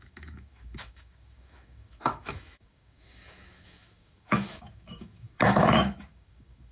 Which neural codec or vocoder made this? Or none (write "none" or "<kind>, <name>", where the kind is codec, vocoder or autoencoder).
autoencoder, DAC-VAE